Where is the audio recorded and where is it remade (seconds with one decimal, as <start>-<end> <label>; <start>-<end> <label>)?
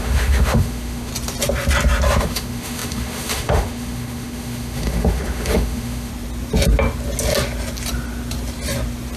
0.0-1.1 remade; 1.1-2.2 recorded; 2.2-6.1 remade; 6.1-9.2 recorded